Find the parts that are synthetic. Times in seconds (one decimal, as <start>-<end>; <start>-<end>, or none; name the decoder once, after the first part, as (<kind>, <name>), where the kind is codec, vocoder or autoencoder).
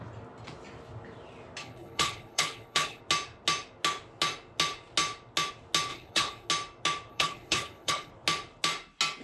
1.6-3.0 (codec, HILCodec); 5.9-6.5; 7.1-8.1